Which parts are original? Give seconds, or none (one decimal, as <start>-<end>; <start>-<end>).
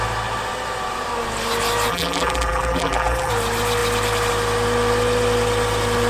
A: 0.0-1.9; 3.3-6.1